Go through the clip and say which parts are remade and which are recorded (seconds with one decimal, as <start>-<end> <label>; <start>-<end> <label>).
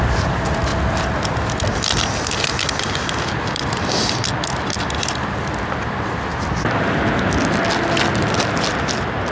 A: 0.0-9.3 recorded